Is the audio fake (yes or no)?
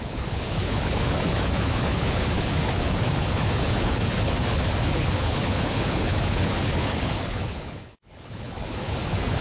yes